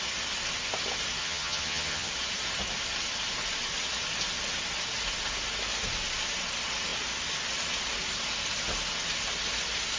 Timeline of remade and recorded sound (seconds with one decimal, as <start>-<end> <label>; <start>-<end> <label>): 0.0-1.2 recorded; 1.2-2.1 remade; 2.1-10.0 recorded